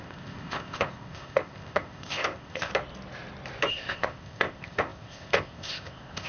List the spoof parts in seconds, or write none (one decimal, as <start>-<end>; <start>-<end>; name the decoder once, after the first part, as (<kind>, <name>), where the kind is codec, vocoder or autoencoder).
0.0-2.7 (codec, ZipCodec); 3.7-6.3

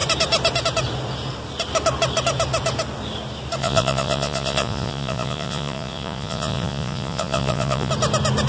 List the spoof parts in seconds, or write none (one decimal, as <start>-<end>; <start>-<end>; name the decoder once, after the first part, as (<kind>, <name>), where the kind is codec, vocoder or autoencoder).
3.6-7.9 (vocoder, Vocos)

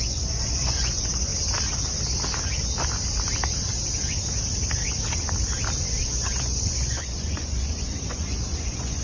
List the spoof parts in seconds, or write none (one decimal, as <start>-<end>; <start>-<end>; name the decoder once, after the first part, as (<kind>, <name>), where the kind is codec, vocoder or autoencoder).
0.0-1.3 (vocoder, Vocos); 5.9-9.0

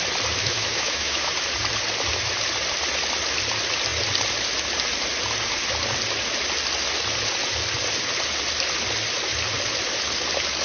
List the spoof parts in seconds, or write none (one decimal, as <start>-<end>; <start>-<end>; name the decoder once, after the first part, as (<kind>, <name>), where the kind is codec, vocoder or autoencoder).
0.4-1.3 (autoencoder, DAC-VAE)

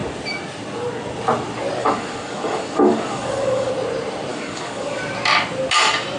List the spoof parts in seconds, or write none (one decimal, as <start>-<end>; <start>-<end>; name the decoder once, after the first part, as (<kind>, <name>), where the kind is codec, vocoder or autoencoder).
1.8-3.7 (codec, DAC); 4.3-5.0

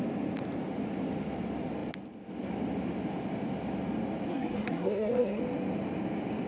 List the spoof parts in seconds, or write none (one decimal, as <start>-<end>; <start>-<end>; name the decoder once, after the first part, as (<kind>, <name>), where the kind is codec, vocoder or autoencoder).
4.3-5.4 (codec, SNAC)